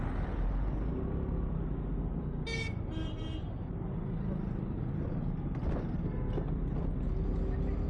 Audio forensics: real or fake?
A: real